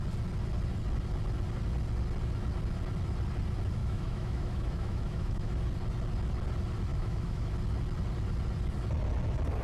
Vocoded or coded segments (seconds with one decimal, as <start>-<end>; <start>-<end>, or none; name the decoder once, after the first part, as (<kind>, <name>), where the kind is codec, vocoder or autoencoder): 3.8-5.6 (autoencoder, DAC-VAE); 6.9-7.5